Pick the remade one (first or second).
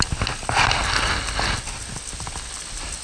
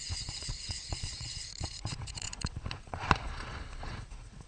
second